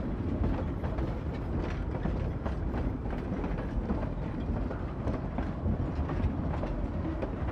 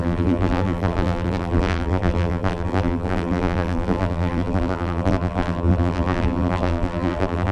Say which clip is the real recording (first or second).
first